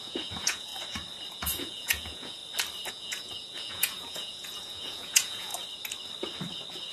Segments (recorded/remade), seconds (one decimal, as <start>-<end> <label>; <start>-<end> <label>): 0.0-0.7 remade; 0.7-1.3 recorded; 1.3-2.4 remade; 2.4-2.9 recorded; 2.9-5.5 remade; 5.5-6.9 recorded